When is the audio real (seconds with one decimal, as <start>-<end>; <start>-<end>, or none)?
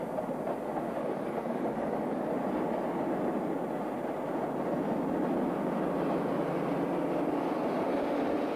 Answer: 0.0-1.0; 2.3-8.6